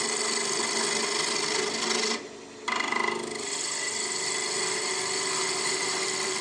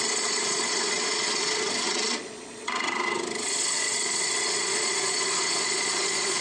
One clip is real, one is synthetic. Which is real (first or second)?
first